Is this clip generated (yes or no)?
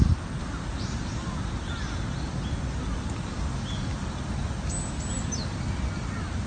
no